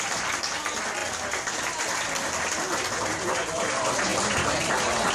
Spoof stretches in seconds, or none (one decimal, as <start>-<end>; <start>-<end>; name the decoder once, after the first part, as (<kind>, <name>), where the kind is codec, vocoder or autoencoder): none